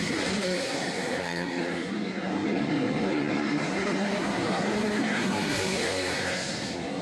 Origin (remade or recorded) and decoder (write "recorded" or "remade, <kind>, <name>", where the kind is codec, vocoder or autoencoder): remade, codec, SNAC